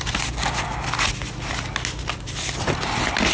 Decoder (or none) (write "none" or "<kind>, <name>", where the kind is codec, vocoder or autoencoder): none